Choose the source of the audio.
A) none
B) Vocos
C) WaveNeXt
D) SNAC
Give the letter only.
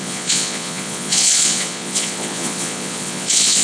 B